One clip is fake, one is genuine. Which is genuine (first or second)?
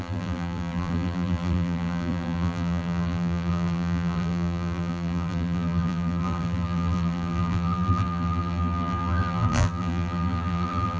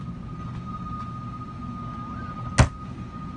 second